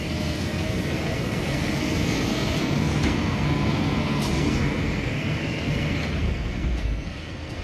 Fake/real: fake